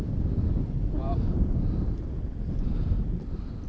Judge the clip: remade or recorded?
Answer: recorded